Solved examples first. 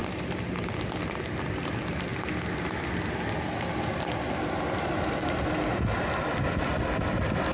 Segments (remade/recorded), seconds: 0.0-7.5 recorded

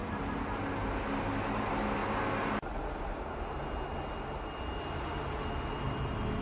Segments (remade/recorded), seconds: 0.0-6.4 recorded

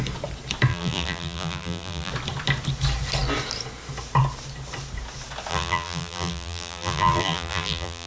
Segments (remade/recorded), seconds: 0.0-0.7 recorded; 0.7-2.1 remade; 2.1-5.5 recorded; 5.5-8.1 remade

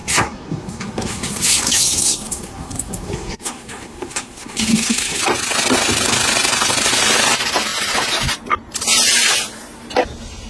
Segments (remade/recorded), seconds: 0.0-5.2 remade; 5.2-10.5 recorded

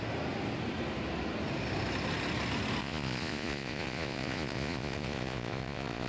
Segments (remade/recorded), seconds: 0.0-2.8 recorded; 2.8-6.1 remade

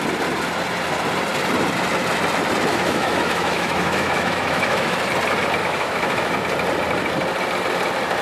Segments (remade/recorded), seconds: 0.0-2.7 recorded; 2.7-5.0 remade; 5.0-5.6 recorded; 5.6-6.3 remade; 6.3-8.2 recorded